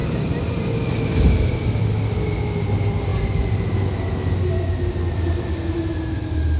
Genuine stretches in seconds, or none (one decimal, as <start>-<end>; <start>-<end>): 0.9-6.6